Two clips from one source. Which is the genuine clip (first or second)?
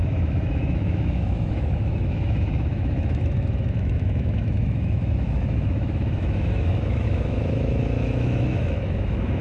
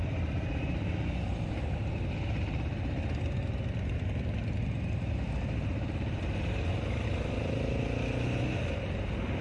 second